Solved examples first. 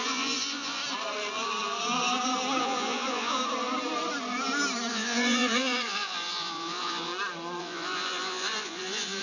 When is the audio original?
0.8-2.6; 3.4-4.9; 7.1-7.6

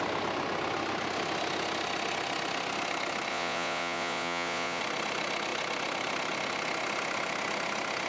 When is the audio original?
0.0-3.3; 4.8-8.1

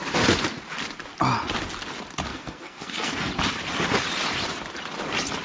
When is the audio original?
0.0-2.3; 3.3-5.4

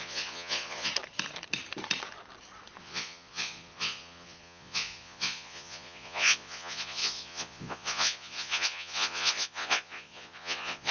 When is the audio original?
0.9-2.8